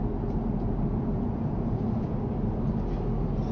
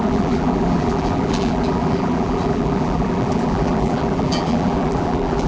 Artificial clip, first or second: second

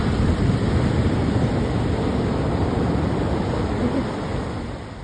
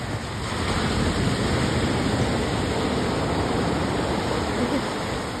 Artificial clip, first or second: first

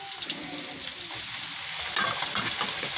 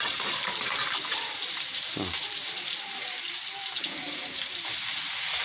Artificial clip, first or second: second